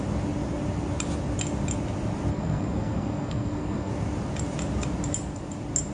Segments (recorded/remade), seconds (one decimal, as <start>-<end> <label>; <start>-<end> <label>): 0.0-2.3 recorded; 2.3-3.9 remade; 3.9-5.9 recorded